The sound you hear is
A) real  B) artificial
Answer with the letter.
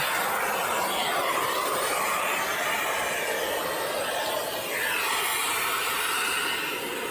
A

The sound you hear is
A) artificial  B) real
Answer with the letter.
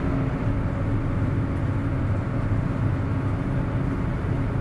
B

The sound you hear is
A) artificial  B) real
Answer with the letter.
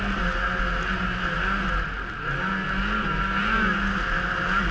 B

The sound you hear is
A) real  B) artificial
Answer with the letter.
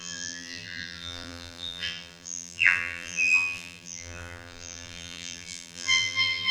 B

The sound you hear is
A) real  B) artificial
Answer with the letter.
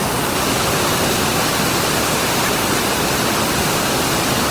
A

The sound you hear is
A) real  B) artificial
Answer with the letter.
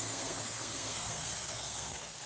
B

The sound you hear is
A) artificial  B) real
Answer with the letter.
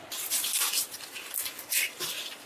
B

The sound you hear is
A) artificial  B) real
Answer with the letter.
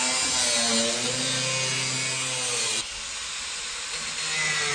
B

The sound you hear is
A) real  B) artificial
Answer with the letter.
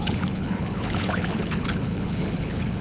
B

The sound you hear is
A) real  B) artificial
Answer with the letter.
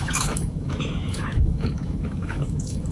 B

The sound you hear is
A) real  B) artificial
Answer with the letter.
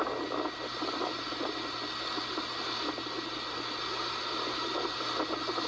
B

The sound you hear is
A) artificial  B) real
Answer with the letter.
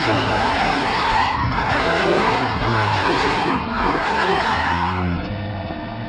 A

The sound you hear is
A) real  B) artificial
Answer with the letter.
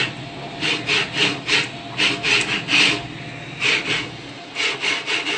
A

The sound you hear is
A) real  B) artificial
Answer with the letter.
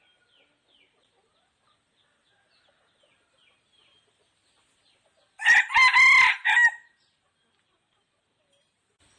A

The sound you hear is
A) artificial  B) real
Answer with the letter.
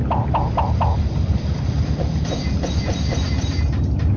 B